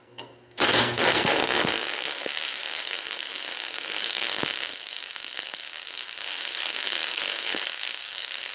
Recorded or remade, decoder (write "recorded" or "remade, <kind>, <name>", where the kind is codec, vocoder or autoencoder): remade, codec, SNAC